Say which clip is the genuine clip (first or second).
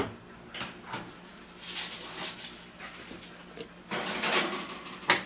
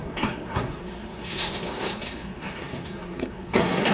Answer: first